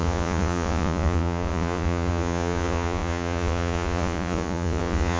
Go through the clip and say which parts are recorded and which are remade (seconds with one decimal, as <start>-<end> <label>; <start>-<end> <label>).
0.0-5.2 remade